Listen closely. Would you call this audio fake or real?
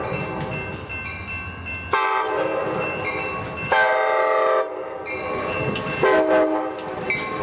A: real